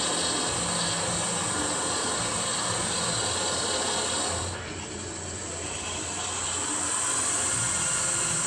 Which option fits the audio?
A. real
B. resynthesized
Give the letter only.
A